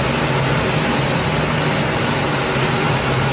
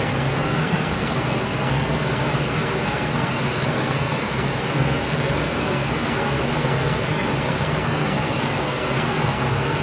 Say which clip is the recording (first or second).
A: first